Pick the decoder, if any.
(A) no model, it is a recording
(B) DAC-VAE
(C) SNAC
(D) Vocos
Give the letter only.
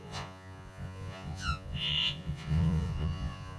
D